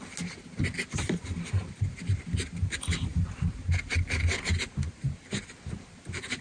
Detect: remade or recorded recorded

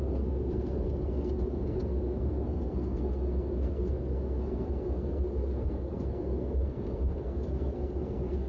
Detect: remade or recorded remade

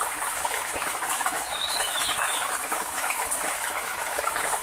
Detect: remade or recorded remade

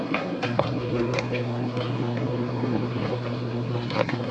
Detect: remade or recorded remade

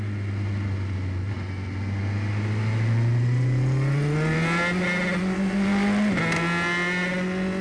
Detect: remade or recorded recorded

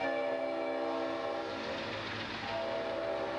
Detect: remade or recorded recorded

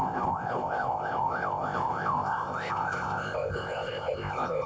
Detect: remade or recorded remade